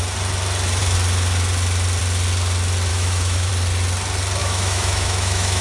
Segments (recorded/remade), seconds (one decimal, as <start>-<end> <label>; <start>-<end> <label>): 0.0-2.9 recorded; 2.9-3.5 remade; 3.5-4.4 recorded; 4.4-5.6 remade